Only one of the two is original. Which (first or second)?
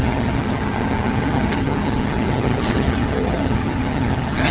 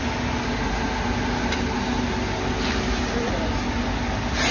second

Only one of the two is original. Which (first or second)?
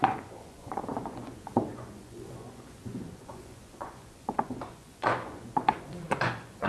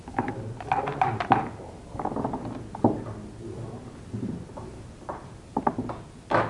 second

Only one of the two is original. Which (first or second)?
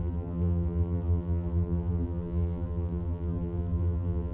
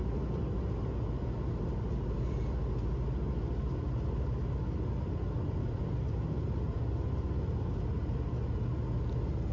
second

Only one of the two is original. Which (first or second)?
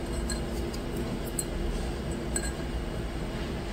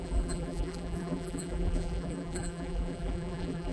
first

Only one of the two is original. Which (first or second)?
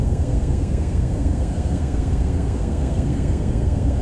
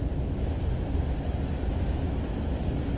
second